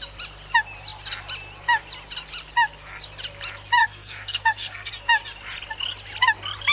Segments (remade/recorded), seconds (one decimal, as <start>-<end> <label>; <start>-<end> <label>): 0.0-3.8 recorded; 3.8-4.9 remade; 4.9-6.7 recorded